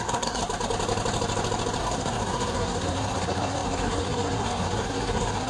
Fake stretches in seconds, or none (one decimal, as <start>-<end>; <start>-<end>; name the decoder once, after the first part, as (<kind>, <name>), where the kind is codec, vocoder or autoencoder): 0.0-0.4 (codec, SNAC); 1.8-5.5